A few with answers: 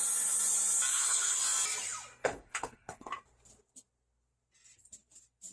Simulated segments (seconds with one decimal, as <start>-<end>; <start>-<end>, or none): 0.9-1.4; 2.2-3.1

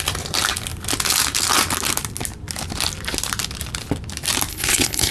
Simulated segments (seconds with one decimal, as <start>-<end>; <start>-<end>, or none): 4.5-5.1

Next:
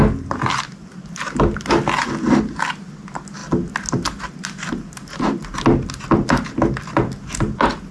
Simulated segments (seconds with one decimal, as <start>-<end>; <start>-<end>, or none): none

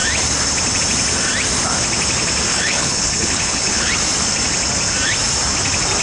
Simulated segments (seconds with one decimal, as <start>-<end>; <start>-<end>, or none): 2.5-3.9

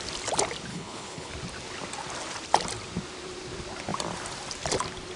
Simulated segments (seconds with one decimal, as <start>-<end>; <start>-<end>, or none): 0.7-1.3

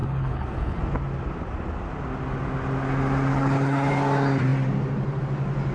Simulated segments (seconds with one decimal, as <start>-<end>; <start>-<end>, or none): 0.0-0.8; 3.3-3.9

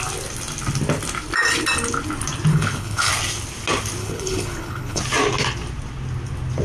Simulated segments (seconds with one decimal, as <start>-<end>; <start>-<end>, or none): 2.5-3.1; 4.0-5.0